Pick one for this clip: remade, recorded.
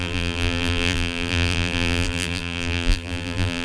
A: remade